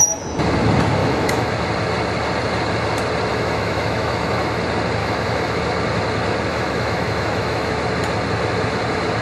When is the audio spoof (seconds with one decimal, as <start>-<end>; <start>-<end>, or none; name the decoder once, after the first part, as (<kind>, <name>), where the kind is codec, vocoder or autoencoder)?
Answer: 1.0-1.5 (autoencoder, DAC-VAE); 3.3-4.6; 5.0-5.6; 6.5-7.7

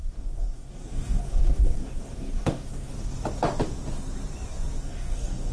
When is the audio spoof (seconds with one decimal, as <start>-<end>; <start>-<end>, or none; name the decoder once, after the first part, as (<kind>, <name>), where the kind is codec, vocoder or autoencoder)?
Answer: 0.0-2.9 (codec, DAC); 4.8-5.5

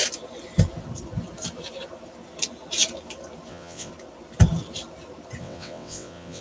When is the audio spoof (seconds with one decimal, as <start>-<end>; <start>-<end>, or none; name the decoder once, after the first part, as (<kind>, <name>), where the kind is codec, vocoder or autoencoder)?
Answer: 3.5-3.9 (vocoder, WaveNeXt); 5.4-6.4

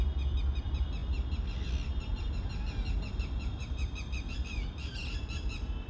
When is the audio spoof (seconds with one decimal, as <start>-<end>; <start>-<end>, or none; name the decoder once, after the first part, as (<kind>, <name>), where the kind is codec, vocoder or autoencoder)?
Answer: none